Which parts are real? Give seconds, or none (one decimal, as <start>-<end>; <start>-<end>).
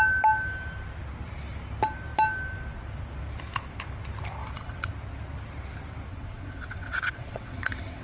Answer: 0.0-4.4; 4.9-6.1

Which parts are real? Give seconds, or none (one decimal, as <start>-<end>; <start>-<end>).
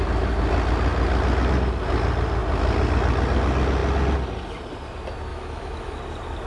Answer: 0.0-5.3; 6.0-6.5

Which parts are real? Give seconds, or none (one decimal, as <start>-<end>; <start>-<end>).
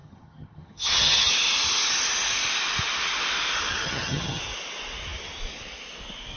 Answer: 1.3-3.7; 4.4-6.4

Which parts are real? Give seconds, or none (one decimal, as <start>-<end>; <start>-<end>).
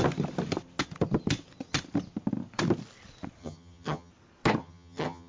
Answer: 0.0-3.4; 4.1-4.6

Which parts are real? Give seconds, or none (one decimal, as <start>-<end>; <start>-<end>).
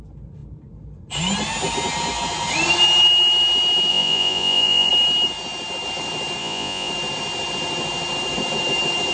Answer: 0.0-3.9; 4.9-6.4; 6.9-9.1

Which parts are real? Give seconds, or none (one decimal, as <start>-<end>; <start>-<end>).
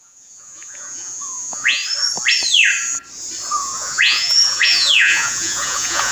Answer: 1.8-3.5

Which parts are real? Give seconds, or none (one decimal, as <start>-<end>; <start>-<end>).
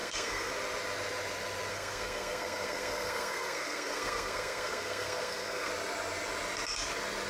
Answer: 0.5-1.7; 5.7-7.3